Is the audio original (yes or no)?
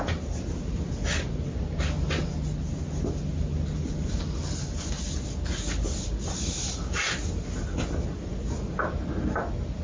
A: yes